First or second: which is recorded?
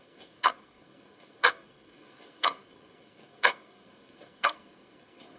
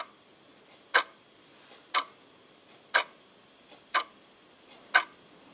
second